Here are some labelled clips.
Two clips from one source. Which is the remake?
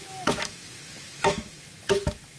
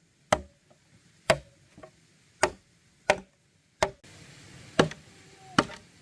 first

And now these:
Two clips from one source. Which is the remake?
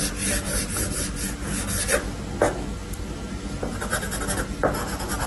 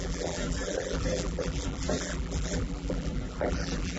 second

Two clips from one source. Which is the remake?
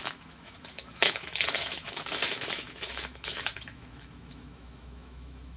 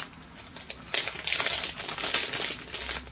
first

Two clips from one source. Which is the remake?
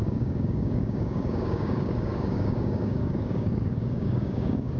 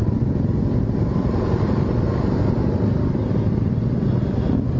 first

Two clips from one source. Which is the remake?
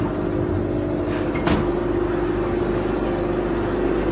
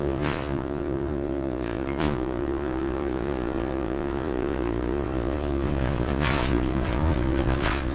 second